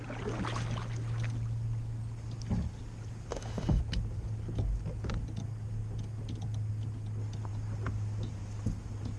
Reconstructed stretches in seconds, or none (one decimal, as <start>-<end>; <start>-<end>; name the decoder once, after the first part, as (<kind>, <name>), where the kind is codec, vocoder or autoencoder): 3.3-3.8 (autoencoder, DAC-VAE)

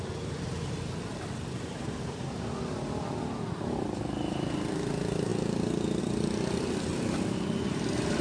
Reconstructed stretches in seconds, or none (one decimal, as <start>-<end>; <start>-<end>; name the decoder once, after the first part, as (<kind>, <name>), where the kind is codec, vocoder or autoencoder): 0.0-5.3 (vocoder, BigVGAN v2); 6.0-8.2

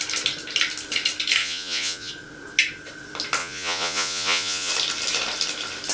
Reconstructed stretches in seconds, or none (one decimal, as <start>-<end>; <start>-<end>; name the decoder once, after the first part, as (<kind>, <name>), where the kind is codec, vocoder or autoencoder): 1.4-2.1 (vocoder, Vocos); 3.4-4.7

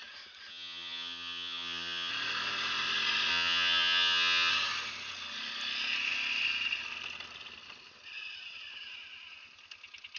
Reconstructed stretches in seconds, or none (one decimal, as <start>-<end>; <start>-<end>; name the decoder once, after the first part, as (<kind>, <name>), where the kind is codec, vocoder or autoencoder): 0.5-2.1 (vocoder, HiFi-GAN); 3.3-4.5